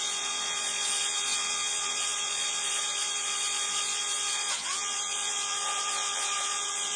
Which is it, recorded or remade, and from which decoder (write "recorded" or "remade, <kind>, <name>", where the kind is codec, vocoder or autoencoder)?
remade, vocoder, Vocos